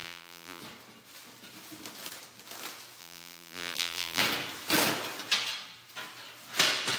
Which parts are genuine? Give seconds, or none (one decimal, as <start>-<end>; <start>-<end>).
0.6-3.0; 4.2-7.0